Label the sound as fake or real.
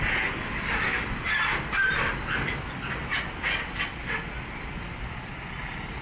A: real